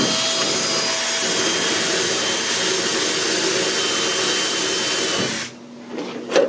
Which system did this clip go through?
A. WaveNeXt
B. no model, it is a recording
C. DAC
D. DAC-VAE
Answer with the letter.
B